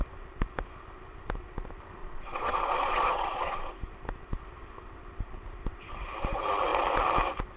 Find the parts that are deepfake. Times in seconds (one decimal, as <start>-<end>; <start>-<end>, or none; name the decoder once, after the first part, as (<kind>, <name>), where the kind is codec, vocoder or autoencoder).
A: 2.0-3.7 (vocoder, Vocos)

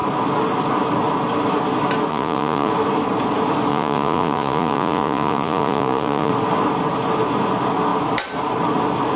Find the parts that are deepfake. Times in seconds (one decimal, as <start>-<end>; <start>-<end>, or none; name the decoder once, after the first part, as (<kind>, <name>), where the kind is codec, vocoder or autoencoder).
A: 2.1-2.7 (vocoder, Vocos); 3.7-6.3

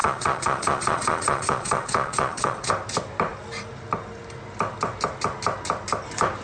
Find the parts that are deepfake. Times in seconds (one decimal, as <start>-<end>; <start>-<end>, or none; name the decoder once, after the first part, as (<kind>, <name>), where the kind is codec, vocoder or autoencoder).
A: 0.0-2.7 (vocoder, Vocos)

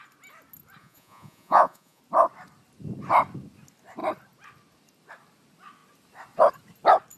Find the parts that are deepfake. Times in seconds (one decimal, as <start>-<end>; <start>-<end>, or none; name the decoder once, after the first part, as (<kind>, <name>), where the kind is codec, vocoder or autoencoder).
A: 0.8-2.0 (vocoder, Vocos)

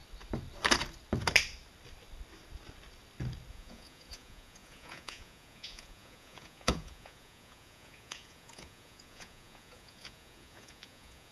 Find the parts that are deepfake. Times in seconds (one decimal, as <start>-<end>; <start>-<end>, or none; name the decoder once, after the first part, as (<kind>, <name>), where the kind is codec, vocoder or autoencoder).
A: 3.5-11.3 (vocoder, Vocos)